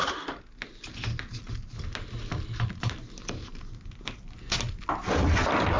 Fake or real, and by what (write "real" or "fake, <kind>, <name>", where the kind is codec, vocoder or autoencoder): real